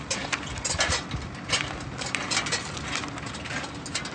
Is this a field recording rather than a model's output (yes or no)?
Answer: yes